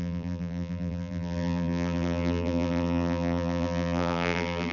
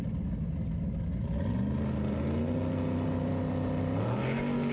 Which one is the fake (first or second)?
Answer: first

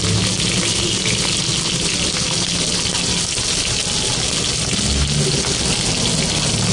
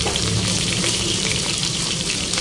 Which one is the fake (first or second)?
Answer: second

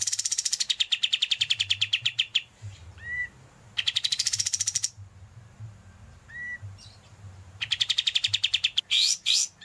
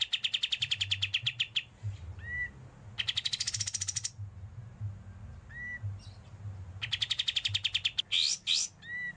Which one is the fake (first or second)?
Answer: first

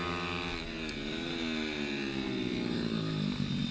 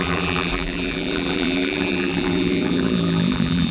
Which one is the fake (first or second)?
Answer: second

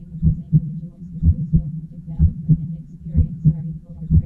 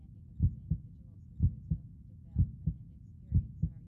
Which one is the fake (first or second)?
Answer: first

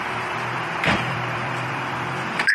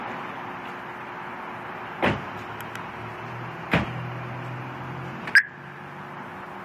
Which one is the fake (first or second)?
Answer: first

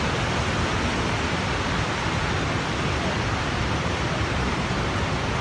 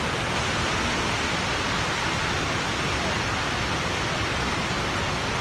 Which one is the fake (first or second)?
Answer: first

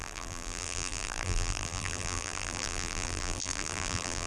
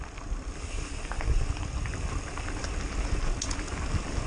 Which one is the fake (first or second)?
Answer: first